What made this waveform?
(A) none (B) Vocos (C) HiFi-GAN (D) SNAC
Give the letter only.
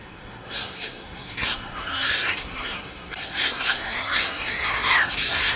D